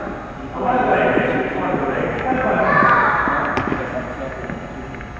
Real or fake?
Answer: real